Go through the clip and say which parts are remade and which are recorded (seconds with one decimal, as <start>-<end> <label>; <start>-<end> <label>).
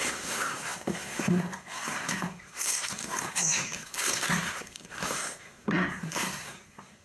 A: 0.0-7.0 remade